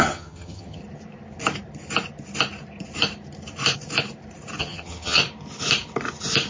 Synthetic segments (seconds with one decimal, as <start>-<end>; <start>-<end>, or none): 0.0-0.8; 4.6-5.2